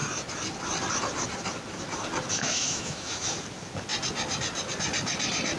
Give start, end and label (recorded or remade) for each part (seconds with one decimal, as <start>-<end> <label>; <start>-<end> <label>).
0.0-2.3 recorded; 2.3-3.3 remade; 3.3-5.6 recorded